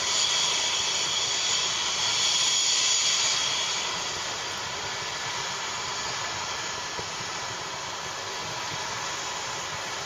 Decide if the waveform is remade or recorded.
recorded